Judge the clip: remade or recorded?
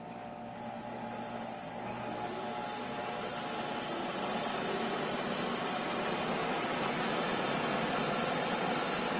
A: recorded